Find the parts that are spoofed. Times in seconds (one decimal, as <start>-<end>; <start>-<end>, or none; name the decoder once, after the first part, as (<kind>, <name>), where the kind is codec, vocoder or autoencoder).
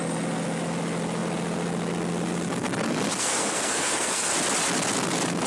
3.1-4.3 (codec, SNAC)